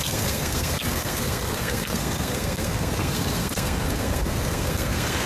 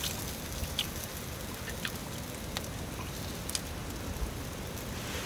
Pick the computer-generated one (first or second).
first